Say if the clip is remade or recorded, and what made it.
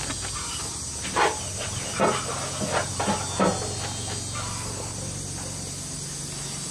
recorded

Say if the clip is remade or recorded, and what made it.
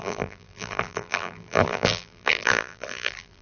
remade, vocoder, BigVGAN v2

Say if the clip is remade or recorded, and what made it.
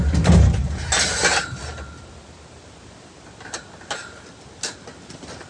recorded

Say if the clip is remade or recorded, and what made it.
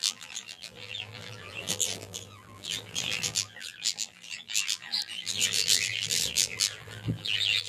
remade, vocoder, BigVGAN v2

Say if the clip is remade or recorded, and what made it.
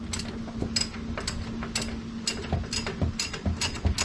recorded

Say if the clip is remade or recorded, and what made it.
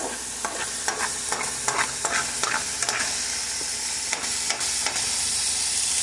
recorded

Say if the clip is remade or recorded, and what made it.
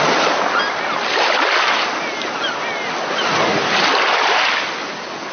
recorded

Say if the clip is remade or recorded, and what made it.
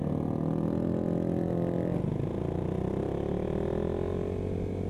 recorded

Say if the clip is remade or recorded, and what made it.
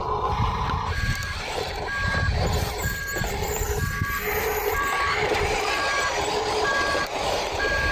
remade, vocoder, BigVGAN v2